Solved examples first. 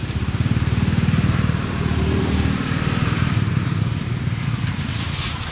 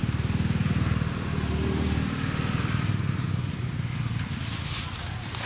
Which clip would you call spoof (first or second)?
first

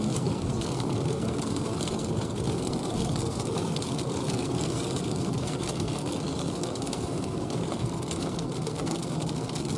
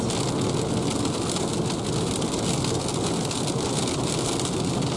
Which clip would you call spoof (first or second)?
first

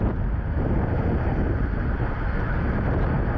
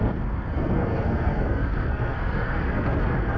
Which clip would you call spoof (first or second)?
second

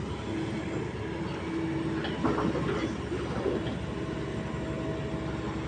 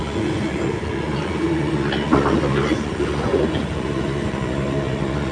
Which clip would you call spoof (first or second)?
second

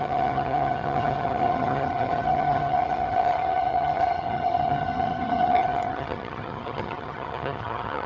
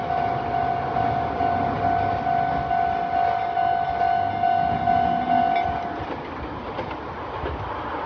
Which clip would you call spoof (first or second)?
first